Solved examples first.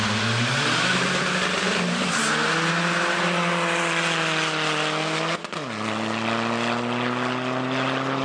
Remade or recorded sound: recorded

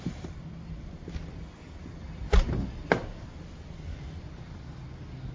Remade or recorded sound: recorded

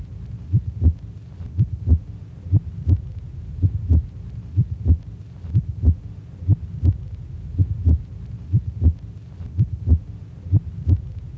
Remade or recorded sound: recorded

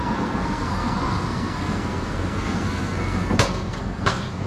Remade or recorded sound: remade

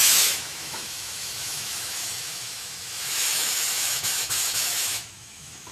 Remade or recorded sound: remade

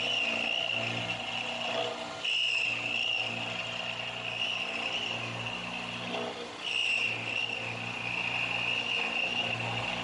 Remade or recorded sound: recorded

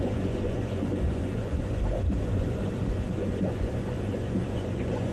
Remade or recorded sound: remade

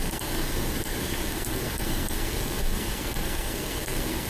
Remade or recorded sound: remade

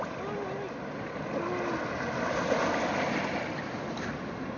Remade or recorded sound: recorded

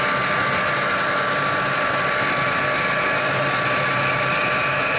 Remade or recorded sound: recorded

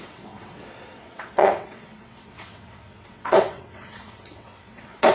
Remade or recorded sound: remade